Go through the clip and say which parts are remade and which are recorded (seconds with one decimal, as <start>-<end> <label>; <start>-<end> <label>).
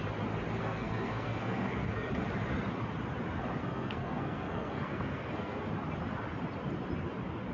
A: 0.0-0.6 recorded; 0.6-2.1 remade; 2.1-3.6 recorded; 3.6-5.7 remade; 5.7-7.5 recorded